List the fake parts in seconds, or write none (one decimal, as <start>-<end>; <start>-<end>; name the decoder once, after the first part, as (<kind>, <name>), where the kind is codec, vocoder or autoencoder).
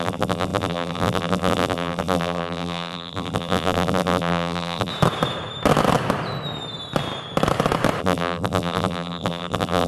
0.0-4.9 (vocoder, BigVGAN v2); 8.0-9.9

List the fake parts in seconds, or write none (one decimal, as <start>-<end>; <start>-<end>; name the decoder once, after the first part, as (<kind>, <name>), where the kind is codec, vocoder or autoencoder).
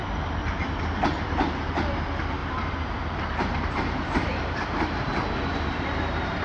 2.4-6.4 (vocoder, BigVGAN v2)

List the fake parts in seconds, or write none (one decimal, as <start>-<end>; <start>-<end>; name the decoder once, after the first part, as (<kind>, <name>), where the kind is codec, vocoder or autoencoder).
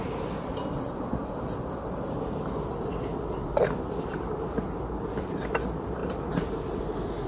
1.2-5.4 (vocoder, BigVGAN v2); 6.0-6.8